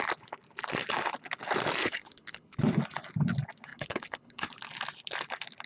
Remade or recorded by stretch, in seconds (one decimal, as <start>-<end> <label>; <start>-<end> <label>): 0.0-1.8 recorded; 1.8-2.6 remade; 2.6-3.7 recorded; 3.7-4.5 remade; 4.5-5.7 recorded